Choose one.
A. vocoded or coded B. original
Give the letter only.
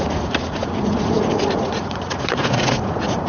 A